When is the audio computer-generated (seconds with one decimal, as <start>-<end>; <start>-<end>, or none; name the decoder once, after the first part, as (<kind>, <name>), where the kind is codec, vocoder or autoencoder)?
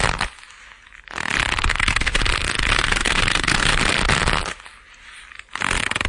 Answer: 1.7-2.2 (codec, SNAC); 2.7-3.8